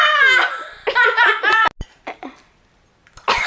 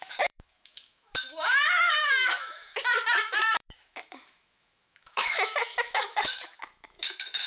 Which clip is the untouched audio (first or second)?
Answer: first